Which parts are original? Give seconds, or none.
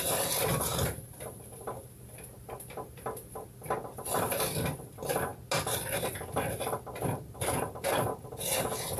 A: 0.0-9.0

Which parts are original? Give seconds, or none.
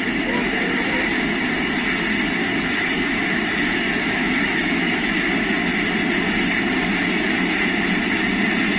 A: 0.0-2.4; 5.2-8.8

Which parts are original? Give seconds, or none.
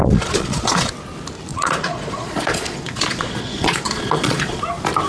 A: 0.9-1.5; 4.6-5.1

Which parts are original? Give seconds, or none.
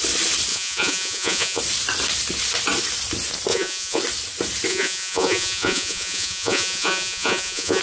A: 0.0-0.5; 1.6-3.5; 4.0-4.7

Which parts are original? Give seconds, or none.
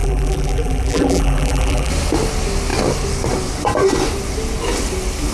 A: 1.9-5.3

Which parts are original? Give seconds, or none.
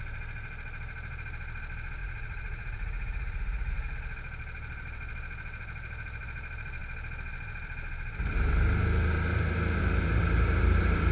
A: 0.0-2.0; 3.7-11.1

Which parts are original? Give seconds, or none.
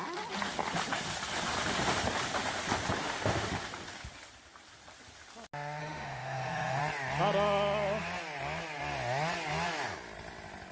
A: 0.0-3.0; 3.5-5.8; 6.8-10.7